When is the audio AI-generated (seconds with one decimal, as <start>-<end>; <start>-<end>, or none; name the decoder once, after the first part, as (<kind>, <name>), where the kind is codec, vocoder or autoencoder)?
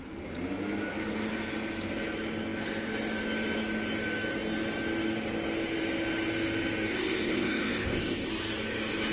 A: 6.9-8.3 (codec, ZipCodec)